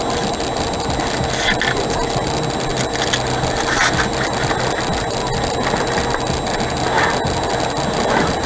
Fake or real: real